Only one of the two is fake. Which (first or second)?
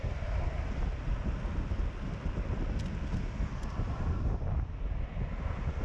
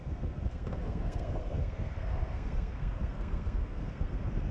second